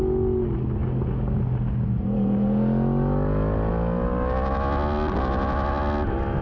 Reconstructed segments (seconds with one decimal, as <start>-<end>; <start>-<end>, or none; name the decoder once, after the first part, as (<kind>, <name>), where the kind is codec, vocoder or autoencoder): none